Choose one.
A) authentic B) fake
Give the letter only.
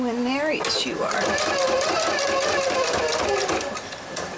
A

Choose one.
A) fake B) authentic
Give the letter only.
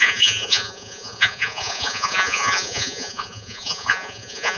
A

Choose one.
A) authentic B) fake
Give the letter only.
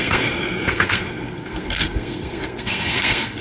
B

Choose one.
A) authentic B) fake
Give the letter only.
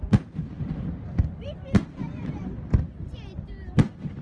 A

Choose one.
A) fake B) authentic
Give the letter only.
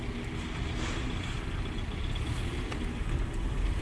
B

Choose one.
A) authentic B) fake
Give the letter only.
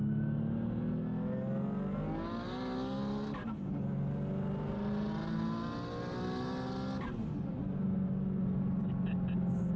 A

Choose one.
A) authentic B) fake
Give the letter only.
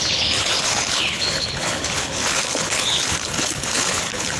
B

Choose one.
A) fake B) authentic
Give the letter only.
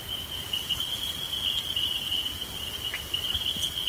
B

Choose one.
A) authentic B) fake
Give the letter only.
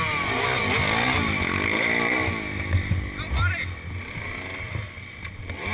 A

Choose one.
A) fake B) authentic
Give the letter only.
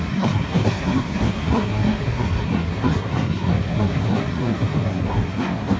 A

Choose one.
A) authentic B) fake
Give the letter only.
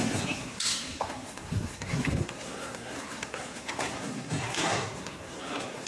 B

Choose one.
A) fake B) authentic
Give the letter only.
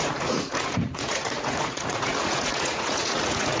A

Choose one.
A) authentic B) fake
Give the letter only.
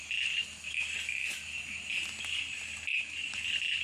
A